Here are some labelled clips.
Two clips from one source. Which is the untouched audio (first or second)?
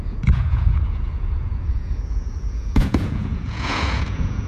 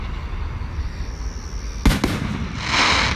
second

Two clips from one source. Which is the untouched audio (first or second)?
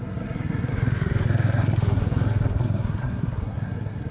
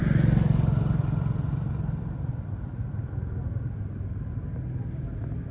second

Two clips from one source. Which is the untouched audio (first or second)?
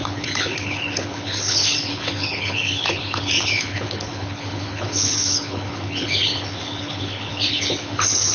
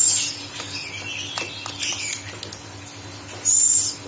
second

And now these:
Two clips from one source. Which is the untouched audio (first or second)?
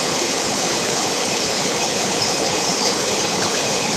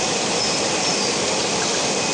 second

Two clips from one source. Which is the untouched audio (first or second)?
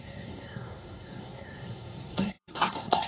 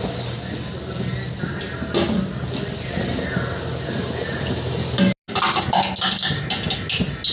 second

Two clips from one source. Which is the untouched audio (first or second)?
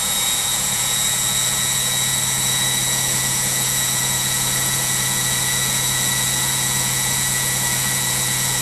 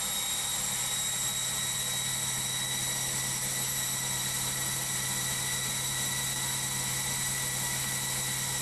second